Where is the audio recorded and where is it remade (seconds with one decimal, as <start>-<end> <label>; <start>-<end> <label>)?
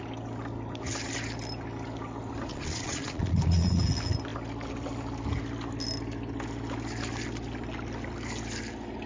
0.0-2.5 recorded; 2.5-3.8 remade; 3.8-9.1 recorded